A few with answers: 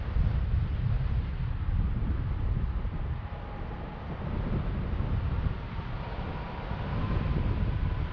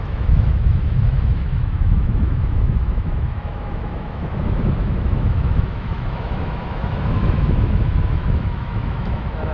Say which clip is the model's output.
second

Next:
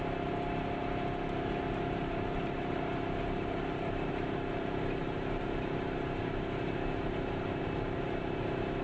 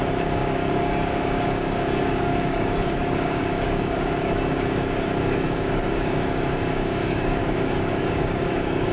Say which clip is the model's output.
second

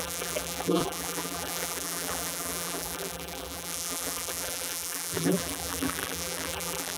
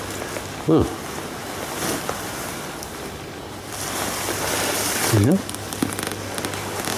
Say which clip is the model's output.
first